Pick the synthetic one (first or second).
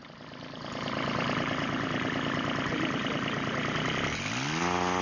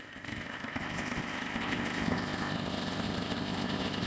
second